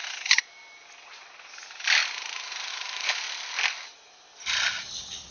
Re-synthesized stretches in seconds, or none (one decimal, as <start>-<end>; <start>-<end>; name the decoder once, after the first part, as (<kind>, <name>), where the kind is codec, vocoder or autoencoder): 2.7-3.2 (autoencoder, DAC-VAE)